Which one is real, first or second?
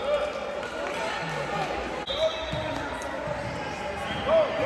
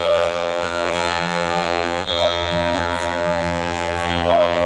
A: first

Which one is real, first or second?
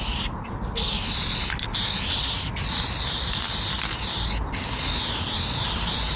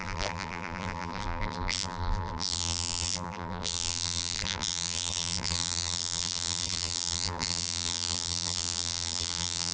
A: first